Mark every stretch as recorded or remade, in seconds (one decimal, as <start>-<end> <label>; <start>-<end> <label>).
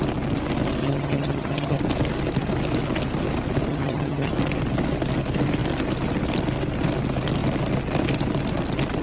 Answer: 0.0-0.8 recorded; 0.8-1.8 remade; 1.8-3.7 recorded; 3.7-4.3 remade; 4.3-9.0 recorded